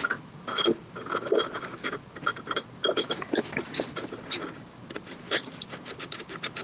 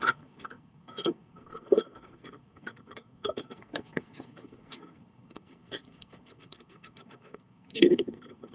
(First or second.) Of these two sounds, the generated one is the second